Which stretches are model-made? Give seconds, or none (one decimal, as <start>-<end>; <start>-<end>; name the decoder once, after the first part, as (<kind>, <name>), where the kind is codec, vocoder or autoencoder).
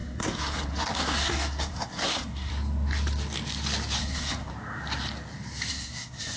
0.0-2.5 (codec, SNAC); 4.0-4.5; 5.7-6.4